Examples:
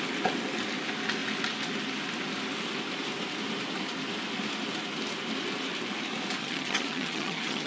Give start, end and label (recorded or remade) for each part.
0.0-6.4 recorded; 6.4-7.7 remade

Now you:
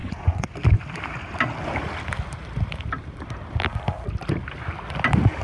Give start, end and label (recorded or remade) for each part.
0.0-0.5 remade; 0.5-5.4 recorded

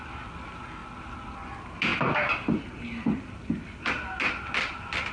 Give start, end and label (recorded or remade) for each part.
0.0-5.1 recorded

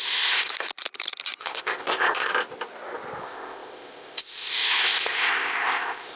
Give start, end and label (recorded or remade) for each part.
0.0-0.5 remade; 0.5-1.4 recorded; 1.4-2.3 remade; 2.3-3.2 recorded; 3.2-6.2 remade

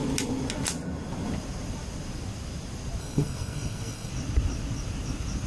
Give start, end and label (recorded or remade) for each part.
0.0-3.0 recorded; 3.0-4.1 remade; 4.1-5.5 recorded

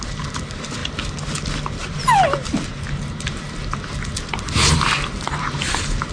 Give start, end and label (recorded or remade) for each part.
0.0-6.1 recorded

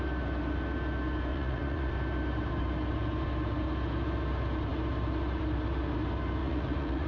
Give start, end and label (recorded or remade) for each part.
0.0-1.3 recorded; 1.3-1.9 remade; 1.9-6.4 recorded; 6.4-7.1 remade

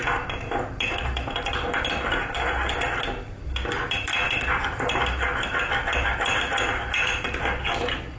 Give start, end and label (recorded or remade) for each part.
0.0-8.2 recorded